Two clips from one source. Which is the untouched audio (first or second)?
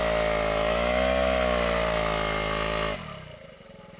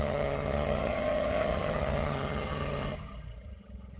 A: first